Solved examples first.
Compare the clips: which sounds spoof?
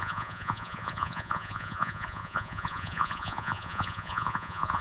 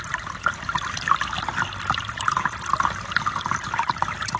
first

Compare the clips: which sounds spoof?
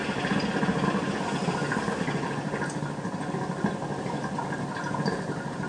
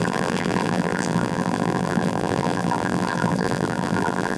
second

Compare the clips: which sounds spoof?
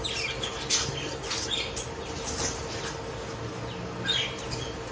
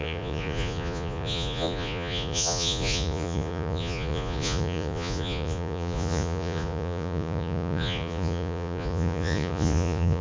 second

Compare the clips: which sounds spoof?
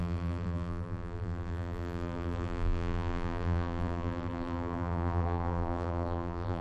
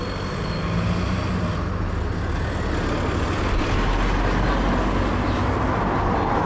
first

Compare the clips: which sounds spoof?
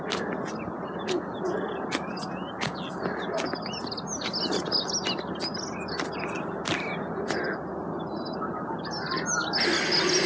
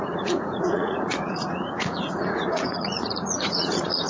second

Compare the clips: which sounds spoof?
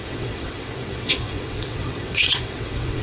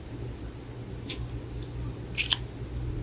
first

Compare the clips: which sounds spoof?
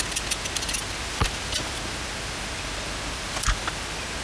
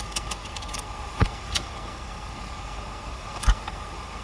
second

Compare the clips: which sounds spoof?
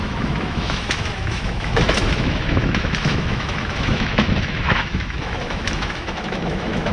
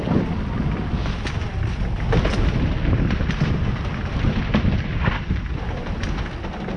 first